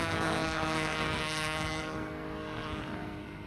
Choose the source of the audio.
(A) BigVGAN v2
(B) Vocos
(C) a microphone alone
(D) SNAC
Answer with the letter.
D